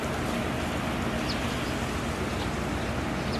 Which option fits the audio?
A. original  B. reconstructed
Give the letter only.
A